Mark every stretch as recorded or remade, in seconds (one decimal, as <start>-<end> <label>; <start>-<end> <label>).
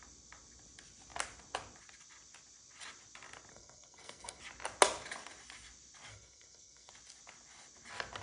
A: 0.0-3.5 recorded; 3.5-4.4 remade; 4.4-6.1 recorded; 6.1-6.9 remade; 6.9-8.2 recorded